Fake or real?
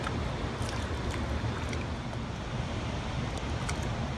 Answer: real